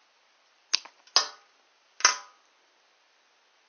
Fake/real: real